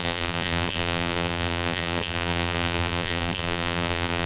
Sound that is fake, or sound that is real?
fake